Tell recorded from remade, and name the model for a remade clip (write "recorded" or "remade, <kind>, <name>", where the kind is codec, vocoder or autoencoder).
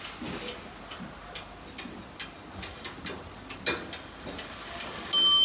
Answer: recorded